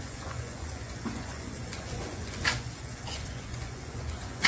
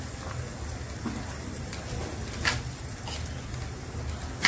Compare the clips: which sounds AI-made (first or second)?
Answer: first